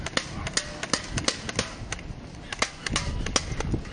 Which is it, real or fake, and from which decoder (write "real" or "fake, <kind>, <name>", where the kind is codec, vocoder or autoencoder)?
real